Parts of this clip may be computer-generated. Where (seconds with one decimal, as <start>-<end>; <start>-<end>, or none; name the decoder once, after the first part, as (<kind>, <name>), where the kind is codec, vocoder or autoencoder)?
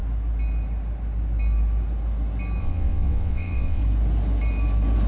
2.6-3.8 (vocoder, WaveNeXt)